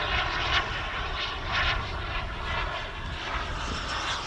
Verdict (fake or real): real